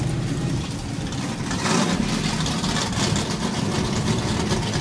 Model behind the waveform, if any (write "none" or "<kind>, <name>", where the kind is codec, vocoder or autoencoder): none